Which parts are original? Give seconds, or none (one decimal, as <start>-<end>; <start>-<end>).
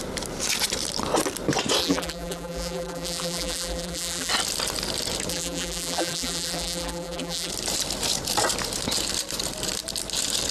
0.0-1.8; 4.3-5.3; 7.5-10.5